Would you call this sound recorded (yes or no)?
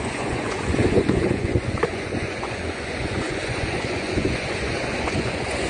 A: no